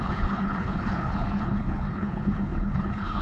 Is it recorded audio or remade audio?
remade